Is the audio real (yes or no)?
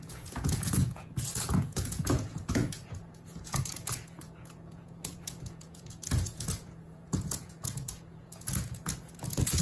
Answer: no